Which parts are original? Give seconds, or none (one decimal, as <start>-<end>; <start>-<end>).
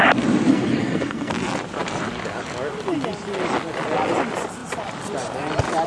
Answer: 0.0-0.5; 1.3-5.9